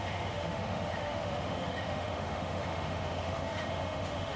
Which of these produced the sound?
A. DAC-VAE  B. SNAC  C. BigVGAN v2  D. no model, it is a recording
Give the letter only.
A